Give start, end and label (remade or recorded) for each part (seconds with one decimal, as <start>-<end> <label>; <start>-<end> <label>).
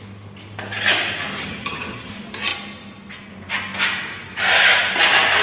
0.0-1.3 recorded; 1.3-2.1 remade; 2.1-5.4 recorded